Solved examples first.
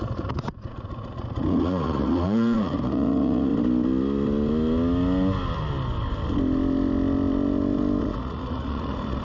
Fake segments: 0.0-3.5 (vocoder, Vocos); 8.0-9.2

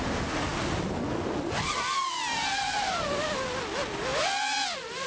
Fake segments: none

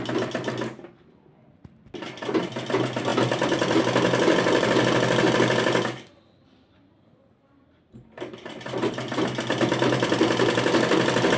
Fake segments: none